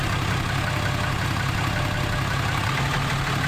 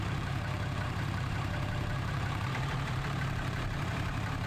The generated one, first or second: second